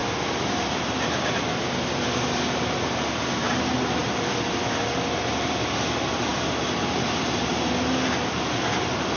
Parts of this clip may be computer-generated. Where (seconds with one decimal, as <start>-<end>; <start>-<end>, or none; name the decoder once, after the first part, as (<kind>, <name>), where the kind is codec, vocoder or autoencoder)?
0.0-0.9 (vocoder, BigVGAN v2); 4.0-4.9; 6.3-7.5